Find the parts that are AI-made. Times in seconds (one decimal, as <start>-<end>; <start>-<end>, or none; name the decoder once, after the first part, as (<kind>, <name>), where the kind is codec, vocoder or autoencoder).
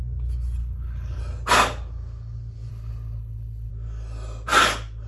0.6-1.2 (codec, HILCodec); 2.7-3.7